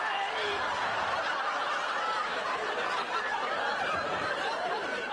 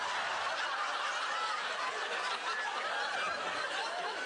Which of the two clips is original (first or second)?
second